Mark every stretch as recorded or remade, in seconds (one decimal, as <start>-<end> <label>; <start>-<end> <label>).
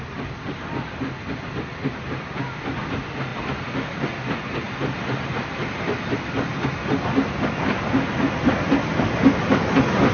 0.0-10.1 recorded